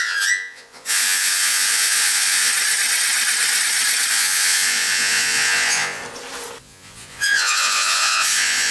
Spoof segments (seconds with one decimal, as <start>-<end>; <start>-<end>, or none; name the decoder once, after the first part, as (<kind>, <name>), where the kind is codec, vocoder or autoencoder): 0.0-2.5 (vocoder, Vocos); 4.1-6.0; 6.6-8.7